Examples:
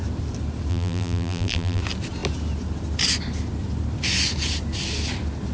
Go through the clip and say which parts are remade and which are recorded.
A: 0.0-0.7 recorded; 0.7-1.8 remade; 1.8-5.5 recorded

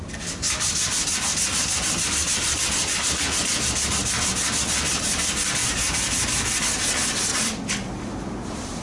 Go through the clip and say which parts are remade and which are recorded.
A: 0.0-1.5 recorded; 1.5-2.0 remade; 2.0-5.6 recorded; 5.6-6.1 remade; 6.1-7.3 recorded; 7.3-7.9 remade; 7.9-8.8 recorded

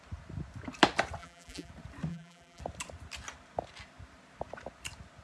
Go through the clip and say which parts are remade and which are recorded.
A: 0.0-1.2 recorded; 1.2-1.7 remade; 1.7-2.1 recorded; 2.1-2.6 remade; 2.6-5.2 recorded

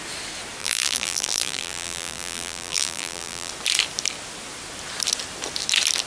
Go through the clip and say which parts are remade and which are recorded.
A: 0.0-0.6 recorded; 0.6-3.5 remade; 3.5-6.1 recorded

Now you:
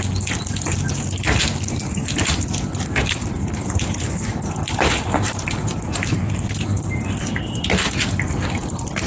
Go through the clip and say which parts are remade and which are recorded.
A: 0.0-3.0 recorded; 3.0-6.2 remade; 6.2-9.1 recorded

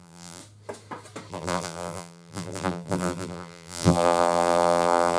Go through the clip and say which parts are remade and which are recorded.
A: 0.0-0.4 remade; 0.4-1.3 recorded; 1.3-5.2 remade